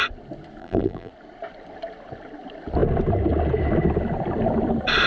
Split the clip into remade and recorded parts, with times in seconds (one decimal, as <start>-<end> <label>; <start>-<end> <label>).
0.0-0.6 recorded; 0.6-1.1 remade; 1.1-5.1 recorded